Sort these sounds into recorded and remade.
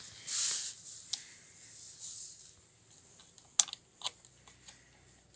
recorded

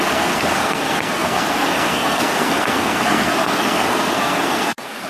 remade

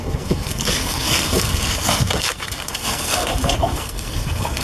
remade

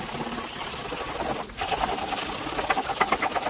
recorded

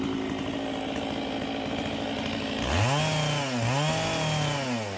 recorded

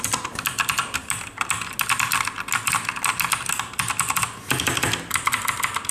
recorded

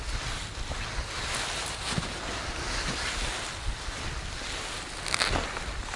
recorded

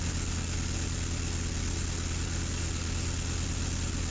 recorded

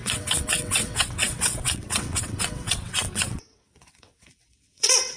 remade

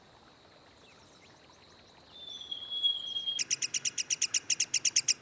recorded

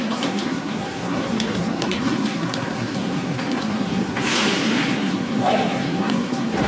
remade